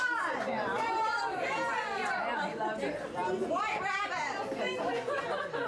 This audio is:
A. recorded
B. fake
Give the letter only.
A